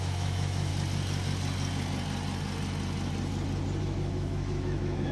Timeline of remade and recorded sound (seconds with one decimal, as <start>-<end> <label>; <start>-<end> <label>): 0.0-0.7 remade; 0.7-3.8 recorded; 3.8-5.1 remade